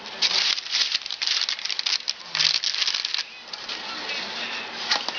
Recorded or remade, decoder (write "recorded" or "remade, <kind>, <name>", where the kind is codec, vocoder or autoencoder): recorded